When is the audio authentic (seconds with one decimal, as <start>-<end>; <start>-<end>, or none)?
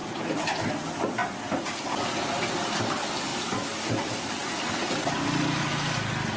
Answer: 0.0-6.4